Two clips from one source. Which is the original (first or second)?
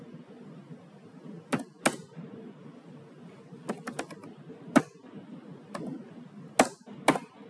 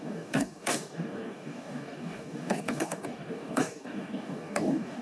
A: first